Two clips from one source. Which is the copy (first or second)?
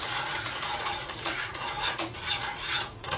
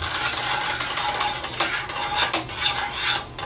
first